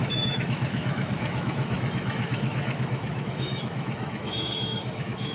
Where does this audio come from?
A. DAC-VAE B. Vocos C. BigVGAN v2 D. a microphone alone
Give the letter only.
A